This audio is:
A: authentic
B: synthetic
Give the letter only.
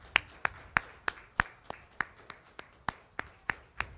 A